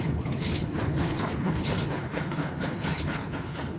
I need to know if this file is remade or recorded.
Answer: remade